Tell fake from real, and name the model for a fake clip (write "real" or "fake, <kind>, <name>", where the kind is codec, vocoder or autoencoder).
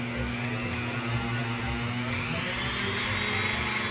real